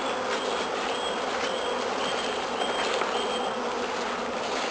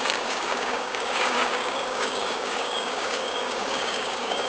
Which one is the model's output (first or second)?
second